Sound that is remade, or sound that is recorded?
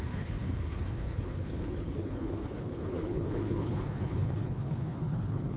remade